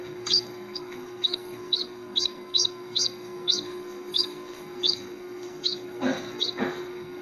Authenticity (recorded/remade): remade